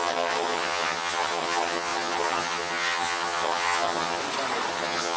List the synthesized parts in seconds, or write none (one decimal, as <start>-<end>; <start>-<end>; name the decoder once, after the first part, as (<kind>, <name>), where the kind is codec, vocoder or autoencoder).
0.0-4.2 (vocoder, HiFi-GAN); 4.7-5.2